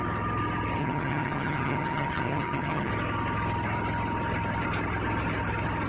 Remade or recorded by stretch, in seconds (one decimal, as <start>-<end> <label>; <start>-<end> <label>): 0.0-0.8 recorded; 0.8-2.9 remade; 2.9-5.9 recorded